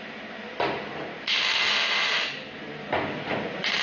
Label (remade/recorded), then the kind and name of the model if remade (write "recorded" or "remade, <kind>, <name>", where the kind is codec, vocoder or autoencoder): recorded